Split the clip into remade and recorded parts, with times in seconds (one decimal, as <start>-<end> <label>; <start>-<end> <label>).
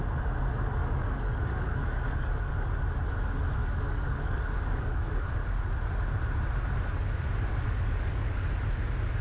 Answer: 0.0-0.8 recorded; 0.8-2.5 remade; 2.5-3.6 recorded; 3.6-5.3 remade; 5.3-7.5 recorded; 7.5-8.6 remade; 8.6-9.2 recorded